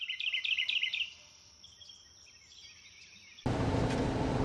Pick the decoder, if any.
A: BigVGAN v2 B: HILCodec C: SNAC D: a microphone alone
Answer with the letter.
A